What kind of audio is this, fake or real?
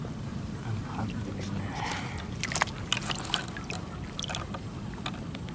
real